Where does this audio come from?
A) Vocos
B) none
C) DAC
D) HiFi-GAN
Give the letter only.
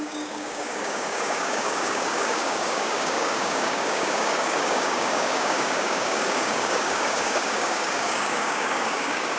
C